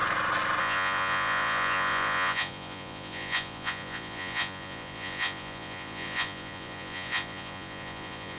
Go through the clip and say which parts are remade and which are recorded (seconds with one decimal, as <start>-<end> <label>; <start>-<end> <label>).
0.0-0.6 recorded; 0.6-8.4 remade